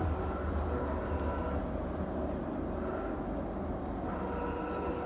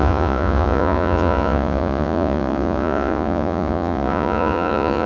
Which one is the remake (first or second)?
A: second